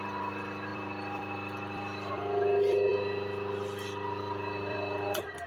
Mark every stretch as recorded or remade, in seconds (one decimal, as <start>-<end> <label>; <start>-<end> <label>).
0.0-2.9 remade; 2.9-4.2 recorded; 4.2-5.5 remade